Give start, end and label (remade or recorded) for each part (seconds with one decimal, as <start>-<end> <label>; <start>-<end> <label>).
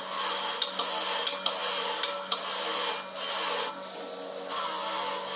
0.0-5.4 recorded